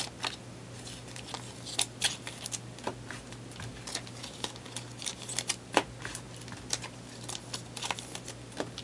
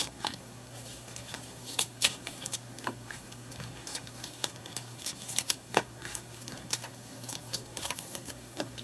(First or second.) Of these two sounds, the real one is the first